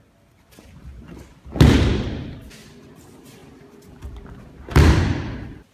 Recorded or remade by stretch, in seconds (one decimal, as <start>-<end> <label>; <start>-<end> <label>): 0.0-3.4 recorded; 3.4-5.0 remade; 5.0-5.7 recorded

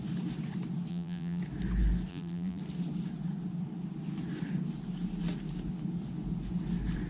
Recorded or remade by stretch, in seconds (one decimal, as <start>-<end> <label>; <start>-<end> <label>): 0.0-0.9 recorded; 0.9-1.4 remade; 1.4-2.1 recorded; 2.1-2.6 remade; 2.6-7.1 recorded

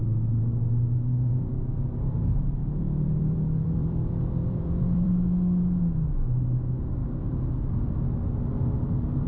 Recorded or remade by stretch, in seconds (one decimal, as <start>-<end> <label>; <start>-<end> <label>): 0.0-2.6 recorded; 2.6-5.1 remade; 5.1-9.3 recorded

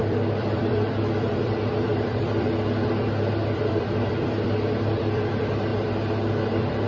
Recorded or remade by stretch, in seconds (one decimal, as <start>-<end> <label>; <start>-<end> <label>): 0.0-5.7 remade; 5.7-6.5 recorded; 6.5-6.9 remade

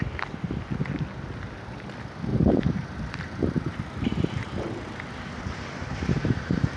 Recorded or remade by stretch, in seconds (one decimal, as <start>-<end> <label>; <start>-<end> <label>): 0.0-2.3 recorded; 2.3-6.8 remade

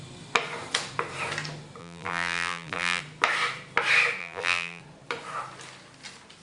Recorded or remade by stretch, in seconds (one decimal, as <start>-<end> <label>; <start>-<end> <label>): 0.0-1.8 recorded; 1.8-3.0 remade; 3.0-4.2 recorded; 4.2-4.8 remade; 4.8-6.4 recorded

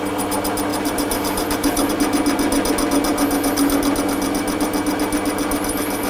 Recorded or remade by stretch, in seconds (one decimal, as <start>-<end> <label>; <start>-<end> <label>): 0.0-0.7 recorded; 0.7-1.9 remade; 1.9-6.1 recorded

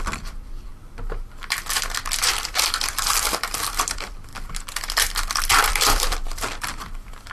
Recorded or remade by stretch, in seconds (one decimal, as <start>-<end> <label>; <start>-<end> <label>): 0.0-0.7 remade; 0.7-2.3 recorded; 2.3-4.3 remade; 4.3-5.1 recorded; 5.1-7.3 remade